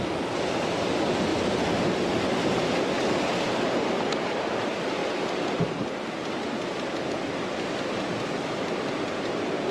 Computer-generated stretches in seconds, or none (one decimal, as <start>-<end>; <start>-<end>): none